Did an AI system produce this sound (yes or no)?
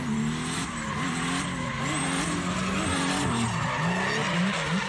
no